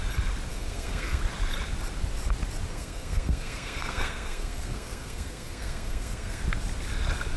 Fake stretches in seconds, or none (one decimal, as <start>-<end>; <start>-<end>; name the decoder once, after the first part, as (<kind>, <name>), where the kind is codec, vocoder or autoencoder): 0.5-1.2 (codec, SNAC); 2.7-6.4